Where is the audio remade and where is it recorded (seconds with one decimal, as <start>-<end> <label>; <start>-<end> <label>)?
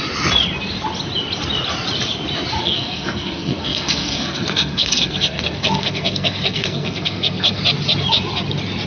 0.0-2.6 recorded; 2.6-7.6 remade; 7.6-8.9 recorded